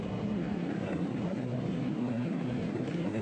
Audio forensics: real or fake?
fake